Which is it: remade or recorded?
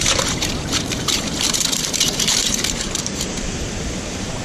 remade